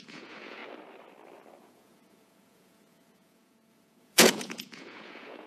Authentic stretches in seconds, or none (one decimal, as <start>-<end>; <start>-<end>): 0.6-1.6